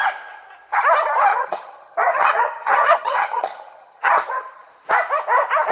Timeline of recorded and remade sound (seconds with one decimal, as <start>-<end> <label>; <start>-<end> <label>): 0.0-1.3 recorded; 1.3-4.7 remade; 4.7-5.7 recorded